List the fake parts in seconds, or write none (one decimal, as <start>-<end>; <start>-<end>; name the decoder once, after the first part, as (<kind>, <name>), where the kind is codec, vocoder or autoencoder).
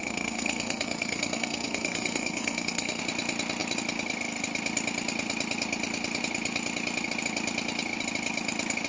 0.0-3.0 (codec, SNAC)